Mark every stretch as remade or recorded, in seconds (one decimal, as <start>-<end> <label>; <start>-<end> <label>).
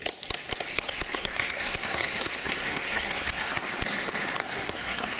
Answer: 0.0-0.7 recorded; 0.7-3.6 remade; 3.6-4.4 recorded; 4.4-5.2 remade